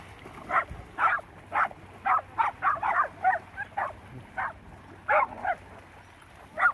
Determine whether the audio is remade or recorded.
recorded